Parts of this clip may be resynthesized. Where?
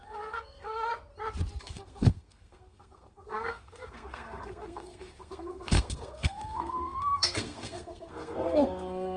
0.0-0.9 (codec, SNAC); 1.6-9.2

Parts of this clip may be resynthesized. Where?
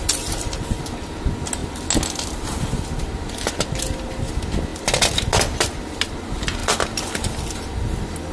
none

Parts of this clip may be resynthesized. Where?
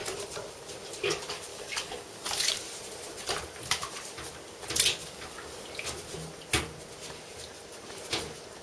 1.5-2.6 (codec, DAC); 5.0-5.6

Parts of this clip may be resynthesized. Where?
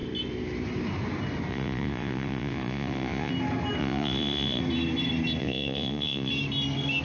1.5-3.3 (vocoder, Vocos); 3.8-4.6; 5.4-6.3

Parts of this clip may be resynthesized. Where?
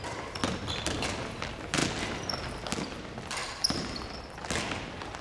none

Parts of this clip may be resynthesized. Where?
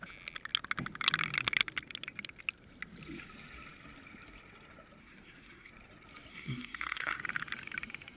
5.0-5.7 (codec, SNAC); 6.3-7.2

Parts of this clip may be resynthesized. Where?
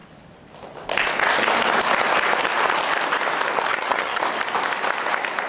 3.7-4.2 (vocoder, HiFi-GAN)